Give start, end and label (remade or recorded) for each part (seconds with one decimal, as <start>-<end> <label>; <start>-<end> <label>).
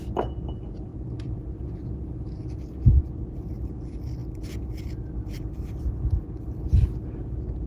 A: 0.0-7.7 recorded